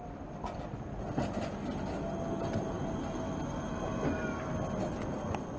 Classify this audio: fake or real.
real